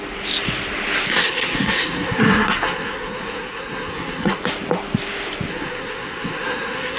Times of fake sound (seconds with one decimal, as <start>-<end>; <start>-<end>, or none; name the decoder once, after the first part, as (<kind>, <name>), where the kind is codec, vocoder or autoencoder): 1.1-4.4 (codec, SNAC); 5.5-7.0